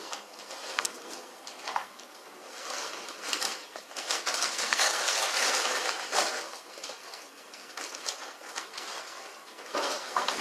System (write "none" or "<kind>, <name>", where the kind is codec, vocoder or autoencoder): codec, SNAC